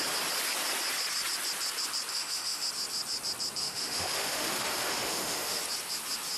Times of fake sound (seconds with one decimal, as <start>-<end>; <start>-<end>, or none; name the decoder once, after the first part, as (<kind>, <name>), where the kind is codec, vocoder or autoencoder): 2.1-2.7 (autoencoder, DAC-VAE); 3.6-5.6